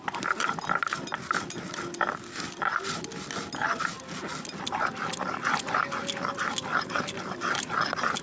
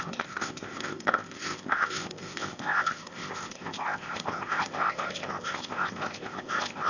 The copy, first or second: second